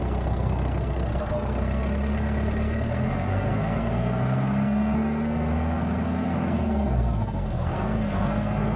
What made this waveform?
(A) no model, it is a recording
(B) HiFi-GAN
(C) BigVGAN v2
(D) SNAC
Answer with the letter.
D